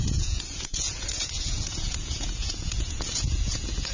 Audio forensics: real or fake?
fake